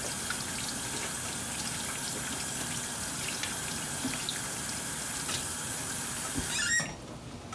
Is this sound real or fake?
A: real